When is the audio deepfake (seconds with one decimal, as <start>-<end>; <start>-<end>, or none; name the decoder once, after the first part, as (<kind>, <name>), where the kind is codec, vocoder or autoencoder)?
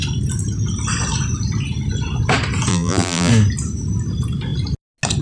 2.7-3.3 (vocoder, BigVGAN v2)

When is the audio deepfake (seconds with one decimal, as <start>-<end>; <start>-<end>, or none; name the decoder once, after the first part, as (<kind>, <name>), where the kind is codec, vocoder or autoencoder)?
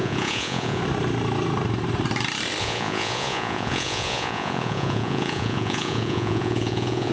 0.0-0.8 (vocoder, Vocos); 2.6-7.1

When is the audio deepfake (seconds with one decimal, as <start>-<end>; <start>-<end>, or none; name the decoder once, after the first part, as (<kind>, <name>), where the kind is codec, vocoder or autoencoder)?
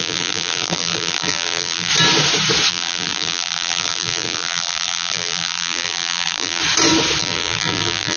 0.0-1.9 (vocoder, BigVGAN v2); 2.7-6.6; 7.2-8.2